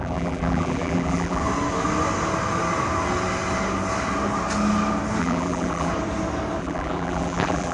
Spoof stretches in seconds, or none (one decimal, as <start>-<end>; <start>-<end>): 0.0-1.4; 5.2-5.9; 6.6-7.7